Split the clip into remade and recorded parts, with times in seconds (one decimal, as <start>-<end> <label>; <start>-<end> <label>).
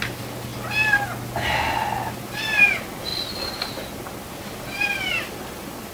0.0-0.5 remade; 0.5-2.1 recorded; 2.1-3.1 remade; 3.1-4.3 recorded; 4.3-5.9 remade